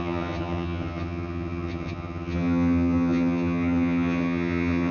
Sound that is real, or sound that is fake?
fake